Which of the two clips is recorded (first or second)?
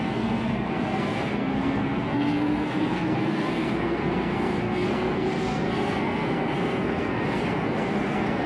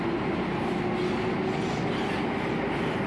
second